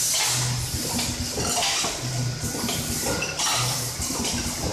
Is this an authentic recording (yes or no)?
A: yes